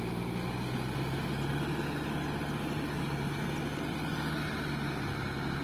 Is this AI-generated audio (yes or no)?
no